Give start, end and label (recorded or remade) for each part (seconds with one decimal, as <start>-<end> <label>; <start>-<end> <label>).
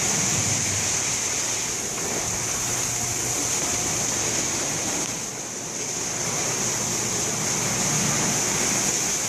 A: 0.0-5.3 recorded; 5.3-6.5 remade; 6.5-9.3 recorded